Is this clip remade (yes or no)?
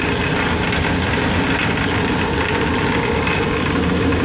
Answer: no